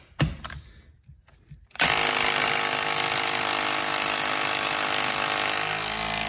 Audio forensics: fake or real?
real